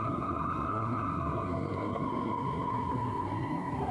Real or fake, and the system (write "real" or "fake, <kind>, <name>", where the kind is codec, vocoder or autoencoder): fake, codec, SNAC